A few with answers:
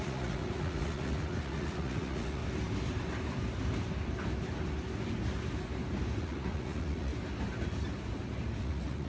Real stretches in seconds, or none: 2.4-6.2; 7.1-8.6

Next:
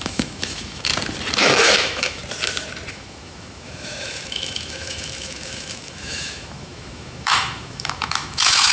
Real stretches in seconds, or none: 0.9-1.4; 2.2-2.9

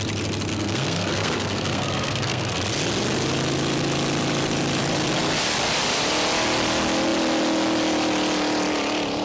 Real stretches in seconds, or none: 0.0-0.5; 2.5-9.2

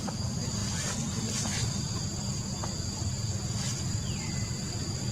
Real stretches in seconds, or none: 0.0-5.1